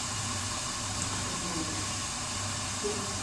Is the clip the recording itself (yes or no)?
no